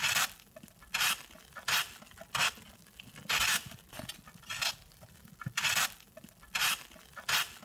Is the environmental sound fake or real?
real